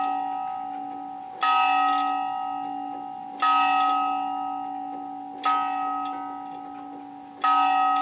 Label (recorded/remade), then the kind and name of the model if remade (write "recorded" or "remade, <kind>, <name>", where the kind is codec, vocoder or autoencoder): recorded